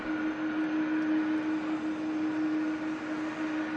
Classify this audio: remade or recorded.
recorded